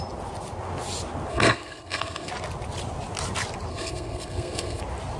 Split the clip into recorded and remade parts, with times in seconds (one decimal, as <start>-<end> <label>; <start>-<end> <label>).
0.0-1.3 recorded; 1.3-2.3 remade; 2.3-3.7 recorded; 3.7-4.8 remade; 4.8-5.2 recorded